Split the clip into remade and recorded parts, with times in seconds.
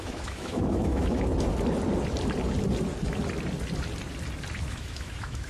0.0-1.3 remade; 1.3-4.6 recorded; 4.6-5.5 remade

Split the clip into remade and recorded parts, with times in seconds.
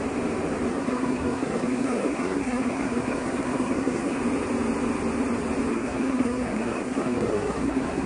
0.0-0.7 recorded; 0.7-4.2 remade; 4.2-5.7 recorded; 5.7-8.1 remade